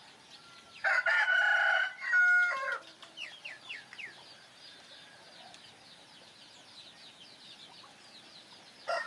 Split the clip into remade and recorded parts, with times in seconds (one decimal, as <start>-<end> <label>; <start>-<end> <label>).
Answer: 0.0-9.1 recorded